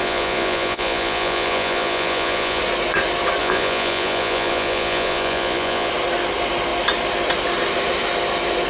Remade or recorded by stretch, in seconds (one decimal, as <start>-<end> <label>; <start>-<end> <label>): 0.0-2.6 remade; 2.6-3.4 recorded; 3.4-5.9 remade; 5.9-8.7 recorded